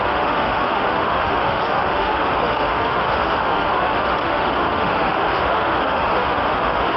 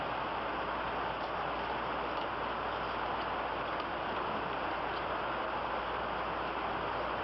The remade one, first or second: first